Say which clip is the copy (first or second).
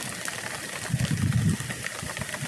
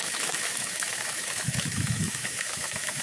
second